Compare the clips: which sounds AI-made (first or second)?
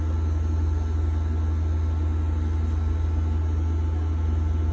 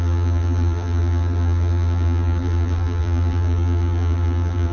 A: second